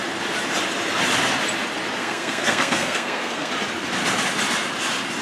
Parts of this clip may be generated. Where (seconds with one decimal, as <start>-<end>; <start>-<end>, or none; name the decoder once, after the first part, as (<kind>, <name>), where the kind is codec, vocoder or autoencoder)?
2.0-3.5 (codec, SNAC)